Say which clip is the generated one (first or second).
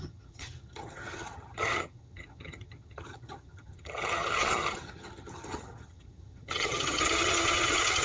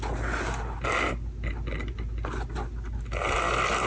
first